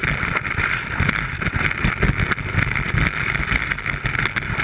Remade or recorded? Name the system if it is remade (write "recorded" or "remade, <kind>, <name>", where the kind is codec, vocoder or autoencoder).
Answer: recorded